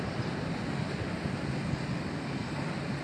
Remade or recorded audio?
recorded